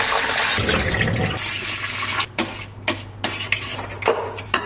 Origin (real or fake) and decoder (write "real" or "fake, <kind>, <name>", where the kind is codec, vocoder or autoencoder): real